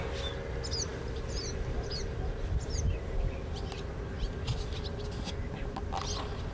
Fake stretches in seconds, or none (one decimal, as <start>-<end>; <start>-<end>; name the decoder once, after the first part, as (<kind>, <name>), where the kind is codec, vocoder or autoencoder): none